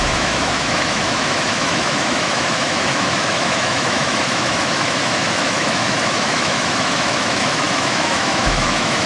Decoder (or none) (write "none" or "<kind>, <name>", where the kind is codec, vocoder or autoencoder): autoencoder, DAC-VAE